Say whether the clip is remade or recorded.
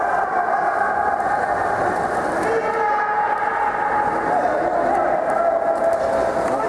recorded